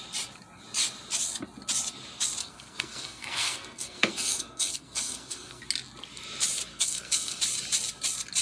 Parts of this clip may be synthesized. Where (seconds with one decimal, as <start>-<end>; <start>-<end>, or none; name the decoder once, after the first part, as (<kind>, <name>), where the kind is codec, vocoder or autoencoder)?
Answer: 2.4-5.6 (codec, SNAC); 6.7-7.4